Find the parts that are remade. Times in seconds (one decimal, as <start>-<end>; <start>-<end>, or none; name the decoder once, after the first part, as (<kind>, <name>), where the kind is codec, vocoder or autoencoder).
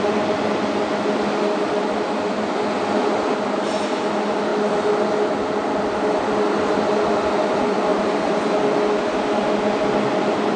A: 7.9-8.4 (vocoder, BigVGAN v2)